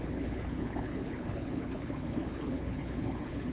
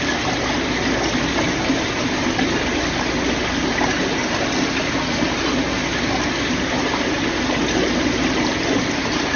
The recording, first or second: second